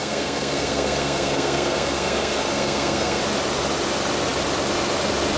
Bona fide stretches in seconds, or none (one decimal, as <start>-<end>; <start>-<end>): 3.2-5.4